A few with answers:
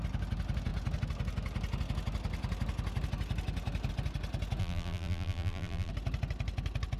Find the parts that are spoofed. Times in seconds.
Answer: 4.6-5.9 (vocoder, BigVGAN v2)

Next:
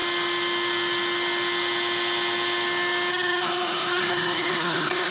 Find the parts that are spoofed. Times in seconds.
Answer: 3.1-5.1 (codec, SNAC)

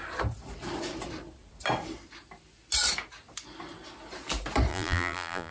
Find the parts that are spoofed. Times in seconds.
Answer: 4.7-5.5 (vocoder, BigVGAN v2)

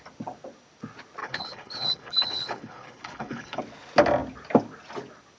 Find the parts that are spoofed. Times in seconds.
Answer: 1.2-3.6 (codec, HILCodec)

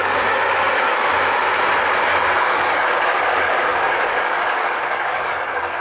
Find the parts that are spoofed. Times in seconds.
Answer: 0.0-1.1 (codec, DAC); 2.4-5.8

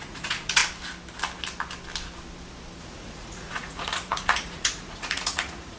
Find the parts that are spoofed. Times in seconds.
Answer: 0.0-0.6 (vocoder, Vocos); 2.8-5.8

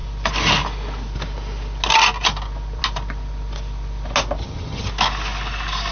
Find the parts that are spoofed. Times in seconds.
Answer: 4.4-4.9 (vocoder, HiFi-GAN)